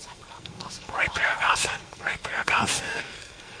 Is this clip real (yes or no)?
no